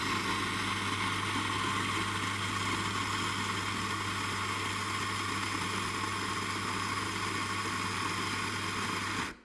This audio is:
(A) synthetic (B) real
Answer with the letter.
B